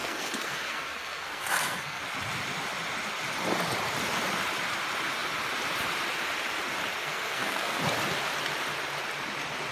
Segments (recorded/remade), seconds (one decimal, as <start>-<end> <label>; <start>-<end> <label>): 0.0-2.0 remade; 2.0-7.0 recorded; 7.0-7.8 remade; 7.8-9.7 recorded

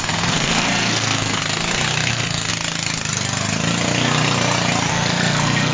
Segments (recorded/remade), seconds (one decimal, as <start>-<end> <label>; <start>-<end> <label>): 0.0-1.4 remade; 1.4-2.1 recorded; 2.1-2.5 remade; 2.5-4.9 recorded; 4.9-5.7 remade

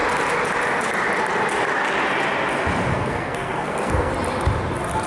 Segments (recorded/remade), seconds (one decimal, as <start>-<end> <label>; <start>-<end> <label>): 0.0-2.9 recorded; 2.9-4.1 remade; 4.1-5.1 recorded

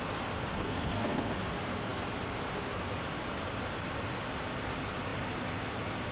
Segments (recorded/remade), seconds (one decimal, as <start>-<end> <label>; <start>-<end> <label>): 0.0-0.5 recorded; 0.5-1.3 remade; 1.3-6.1 recorded

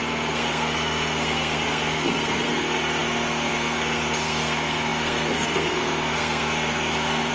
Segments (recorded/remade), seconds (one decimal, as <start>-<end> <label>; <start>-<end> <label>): 0.0-7.3 remade

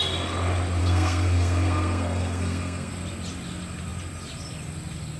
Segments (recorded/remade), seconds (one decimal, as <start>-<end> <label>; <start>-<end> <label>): 0.0-0.8 recorded; 0.8-2.9 remade; 2.9-5.2 recorded

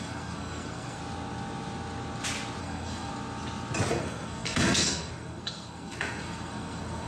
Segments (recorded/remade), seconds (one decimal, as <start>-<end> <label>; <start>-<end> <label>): 0.0-1.0 remade; 1.0-2.6 recorded; 2.6-3.1 remade; 3.1-3.9 recorded; 3.9-7.1 remade